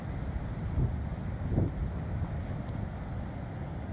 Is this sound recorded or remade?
recorded